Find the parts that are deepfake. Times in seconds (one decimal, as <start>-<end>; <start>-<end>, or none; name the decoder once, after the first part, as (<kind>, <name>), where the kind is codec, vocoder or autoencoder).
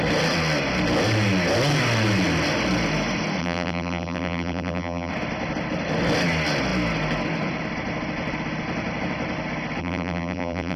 3.4-5.1 (vocoder, BigVGAN v2); 9.8-10.8